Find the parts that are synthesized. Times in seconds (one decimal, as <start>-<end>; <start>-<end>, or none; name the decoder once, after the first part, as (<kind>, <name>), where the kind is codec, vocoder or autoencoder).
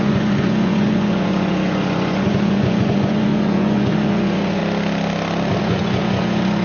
0.0-4.6 (vocoder, Vocos); 5.6-6.6